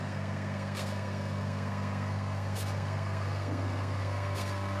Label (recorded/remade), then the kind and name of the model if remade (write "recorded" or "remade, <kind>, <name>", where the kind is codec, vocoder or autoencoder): remade, codec, SNAC